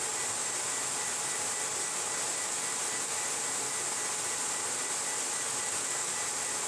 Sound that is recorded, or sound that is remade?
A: recorded